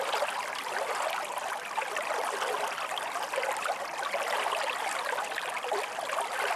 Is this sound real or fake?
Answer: real